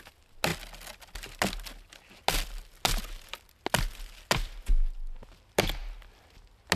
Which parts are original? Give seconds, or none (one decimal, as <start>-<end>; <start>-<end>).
0.0-6.8